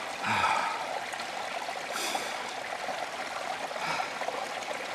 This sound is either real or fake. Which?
real